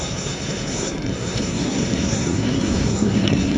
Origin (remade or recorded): remade